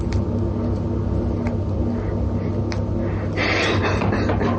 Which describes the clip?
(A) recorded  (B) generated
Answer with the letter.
A